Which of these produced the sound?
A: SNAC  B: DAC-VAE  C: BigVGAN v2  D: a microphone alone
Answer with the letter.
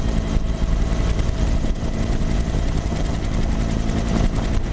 C